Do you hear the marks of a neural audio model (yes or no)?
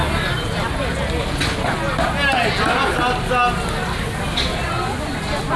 no